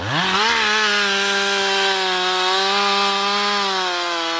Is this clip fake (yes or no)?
no